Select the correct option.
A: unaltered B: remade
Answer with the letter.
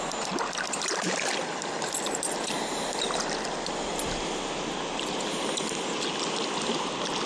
A